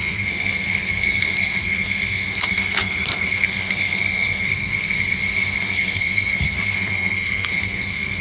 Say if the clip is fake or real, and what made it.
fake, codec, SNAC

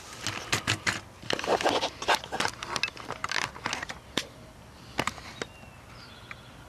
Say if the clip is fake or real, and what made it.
real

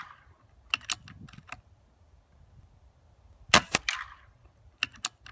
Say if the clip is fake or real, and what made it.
real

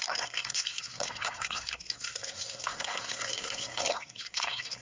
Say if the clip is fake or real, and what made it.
fake, codec, SNAC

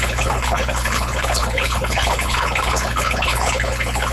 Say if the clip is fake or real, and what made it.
fake, codec, HILCodec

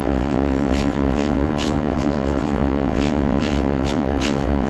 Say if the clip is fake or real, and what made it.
fake, vocoder, WaveNeXt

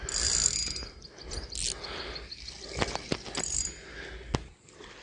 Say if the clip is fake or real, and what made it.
real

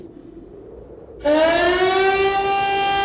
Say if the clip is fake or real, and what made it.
real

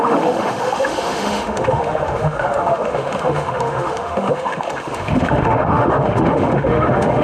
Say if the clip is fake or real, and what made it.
fake, autoencoder, DAC-VAE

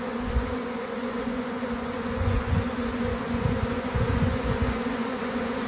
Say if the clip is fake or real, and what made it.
fake, vocoder, Vocos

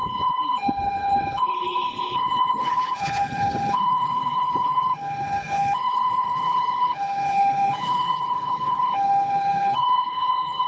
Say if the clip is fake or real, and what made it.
fake, codec, HILCodec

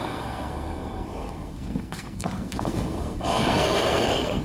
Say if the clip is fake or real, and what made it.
fake, codec, SNAC